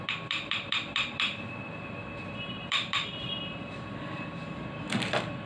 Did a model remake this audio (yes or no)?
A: yes